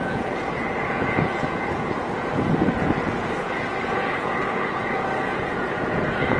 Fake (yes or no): yes